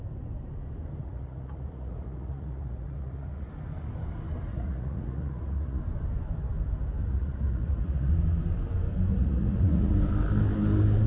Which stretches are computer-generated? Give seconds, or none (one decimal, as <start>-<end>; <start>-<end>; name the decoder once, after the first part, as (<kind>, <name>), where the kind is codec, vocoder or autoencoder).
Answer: 1.0-3.5 (vocoder, Vocos); 4.5-5.8; 7.0-8.1; 9.1-9.9